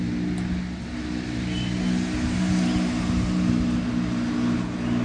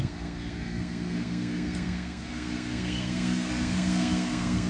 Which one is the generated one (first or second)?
second